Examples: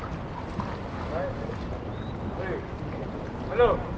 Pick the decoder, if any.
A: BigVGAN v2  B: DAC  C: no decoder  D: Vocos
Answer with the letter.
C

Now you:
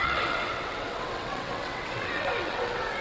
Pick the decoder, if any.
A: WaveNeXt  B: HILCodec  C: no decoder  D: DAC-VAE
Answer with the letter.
A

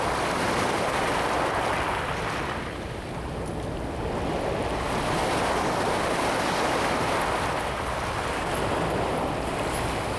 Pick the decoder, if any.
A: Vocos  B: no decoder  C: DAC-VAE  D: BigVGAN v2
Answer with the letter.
B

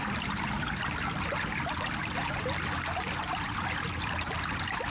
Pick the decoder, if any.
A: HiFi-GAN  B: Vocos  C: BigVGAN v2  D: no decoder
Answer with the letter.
D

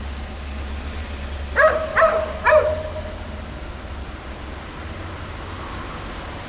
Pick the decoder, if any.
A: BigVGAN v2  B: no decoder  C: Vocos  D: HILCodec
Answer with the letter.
B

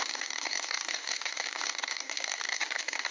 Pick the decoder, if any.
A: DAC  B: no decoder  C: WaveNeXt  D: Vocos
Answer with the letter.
A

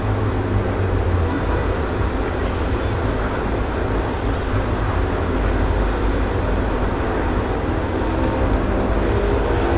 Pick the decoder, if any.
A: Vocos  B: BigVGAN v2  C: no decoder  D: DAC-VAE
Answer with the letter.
C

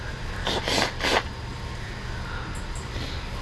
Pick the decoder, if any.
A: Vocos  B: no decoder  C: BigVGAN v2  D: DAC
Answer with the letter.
B